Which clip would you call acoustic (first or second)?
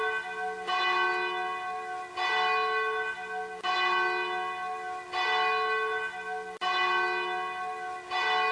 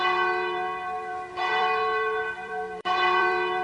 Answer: first